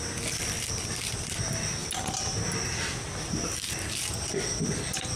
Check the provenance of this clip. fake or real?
real